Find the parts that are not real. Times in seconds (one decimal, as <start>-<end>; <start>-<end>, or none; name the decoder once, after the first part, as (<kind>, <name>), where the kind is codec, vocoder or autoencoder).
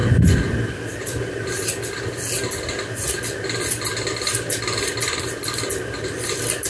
none